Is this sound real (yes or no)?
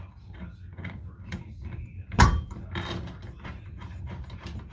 yes